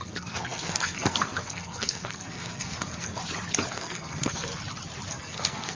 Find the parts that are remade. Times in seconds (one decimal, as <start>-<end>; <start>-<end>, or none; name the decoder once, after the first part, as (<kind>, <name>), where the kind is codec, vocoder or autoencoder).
0.0-3.2 (codec, SNAC); 3.7-4.5; 5.1-5.7